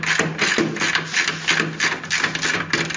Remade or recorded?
recorded